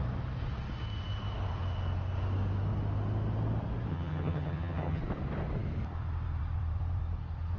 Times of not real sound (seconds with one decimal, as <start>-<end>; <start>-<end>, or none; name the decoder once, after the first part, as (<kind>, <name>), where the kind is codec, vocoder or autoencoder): 3.9-5.0 (vocoder, HiFi-GAN)